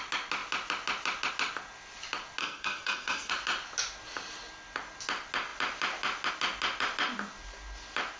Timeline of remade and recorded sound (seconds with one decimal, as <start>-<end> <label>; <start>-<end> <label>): 0.0-2.4 recorded; 2.4-3.3 remade; 3.3-8.2 recorded